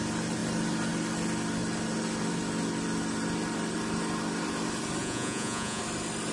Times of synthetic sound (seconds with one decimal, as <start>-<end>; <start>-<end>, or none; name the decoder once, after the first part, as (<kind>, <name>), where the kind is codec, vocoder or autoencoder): 5.0-5.8 (vocoder, Vocos)